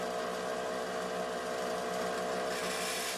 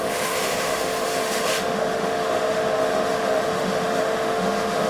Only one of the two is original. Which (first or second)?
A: first